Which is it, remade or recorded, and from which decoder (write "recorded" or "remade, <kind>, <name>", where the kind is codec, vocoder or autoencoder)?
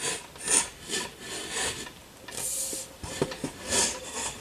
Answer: recorded